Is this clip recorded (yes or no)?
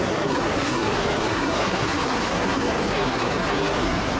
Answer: no